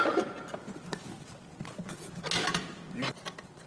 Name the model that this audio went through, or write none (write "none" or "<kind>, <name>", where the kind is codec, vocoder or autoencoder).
none